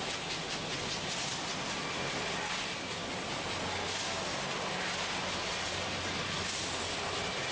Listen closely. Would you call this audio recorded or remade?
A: recorded